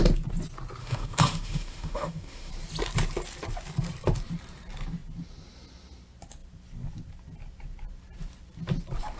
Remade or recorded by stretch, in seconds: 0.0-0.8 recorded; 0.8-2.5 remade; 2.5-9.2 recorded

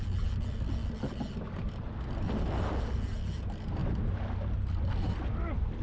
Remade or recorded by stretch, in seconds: 0.0-5.8 recorded

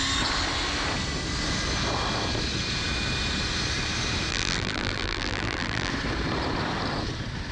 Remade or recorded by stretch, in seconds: 0.0-4.3 recorded; 4.3-5.9 remade; 5.9-7.5 recorded

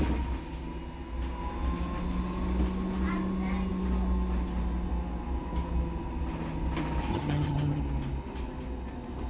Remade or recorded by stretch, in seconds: 0.0-7.1 recorded; 7.1-7.8 remade; 7.8-9.3 recorded

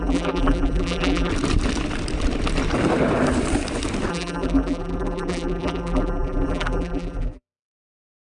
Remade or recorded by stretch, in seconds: 0.0-1.3 remade; 1.3-4.1 recorded; 4.1-8.3 remade

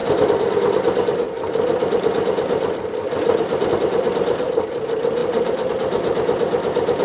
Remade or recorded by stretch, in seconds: 0.0-5.2 recorded; 5.2-5.7 remade; 5.7-7.0 recorded

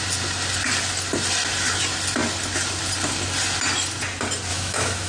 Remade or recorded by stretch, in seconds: 0.0-4.5 recorded; 4.5-5.1 remade

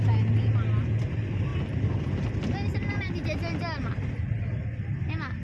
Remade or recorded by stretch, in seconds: 0.0-5.4 recorded